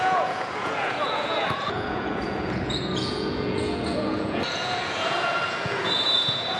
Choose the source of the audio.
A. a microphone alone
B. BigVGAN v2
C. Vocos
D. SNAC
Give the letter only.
C